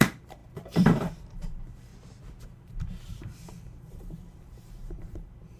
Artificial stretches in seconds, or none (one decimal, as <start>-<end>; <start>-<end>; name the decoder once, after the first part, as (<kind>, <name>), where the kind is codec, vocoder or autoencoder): 0.0-1.9 (vocoder, BigVGAN v2); 2.4-5.6